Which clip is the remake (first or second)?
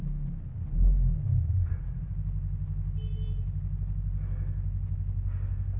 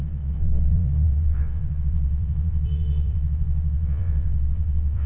second